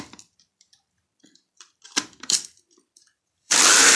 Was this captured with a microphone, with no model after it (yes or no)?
no